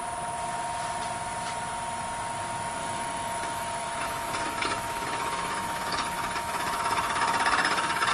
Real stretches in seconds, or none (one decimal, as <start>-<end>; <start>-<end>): 0.0-2.8